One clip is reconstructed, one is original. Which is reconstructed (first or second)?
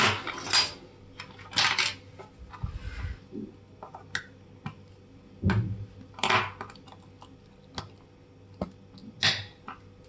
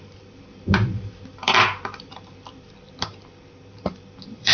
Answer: second